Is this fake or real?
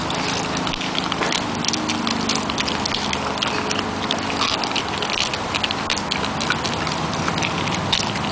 real